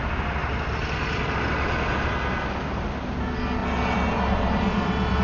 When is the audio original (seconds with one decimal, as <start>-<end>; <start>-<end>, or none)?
0.0-3.6